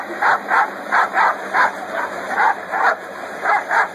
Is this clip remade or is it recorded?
remade